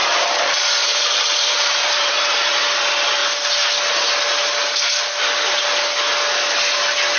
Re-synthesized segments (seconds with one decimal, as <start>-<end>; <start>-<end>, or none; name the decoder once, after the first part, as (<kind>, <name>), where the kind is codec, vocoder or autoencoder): 0.0-2.8 (vocoder, BigVGAN v2)